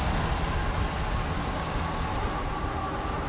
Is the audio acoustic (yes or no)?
yes